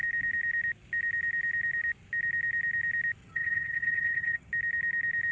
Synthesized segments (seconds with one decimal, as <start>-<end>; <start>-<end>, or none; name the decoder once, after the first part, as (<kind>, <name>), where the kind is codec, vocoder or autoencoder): 3.2-4.5 (vocoder, HiFi-GAN)